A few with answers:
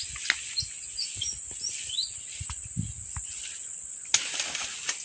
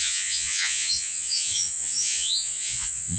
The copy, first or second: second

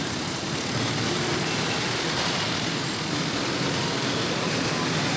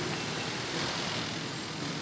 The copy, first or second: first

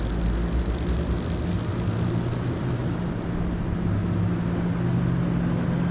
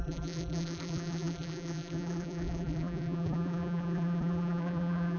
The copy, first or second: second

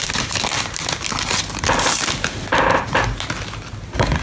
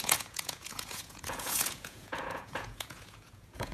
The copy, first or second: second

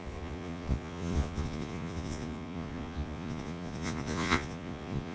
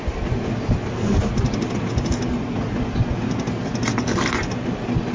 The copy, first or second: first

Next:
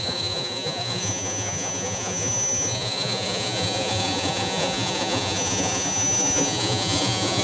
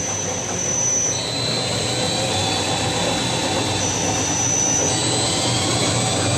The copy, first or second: first